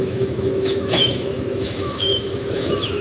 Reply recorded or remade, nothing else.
remade